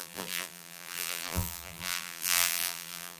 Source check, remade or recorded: remade